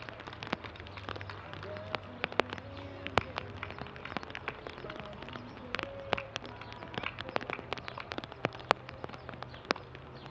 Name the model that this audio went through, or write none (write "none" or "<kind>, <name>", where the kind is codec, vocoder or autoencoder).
none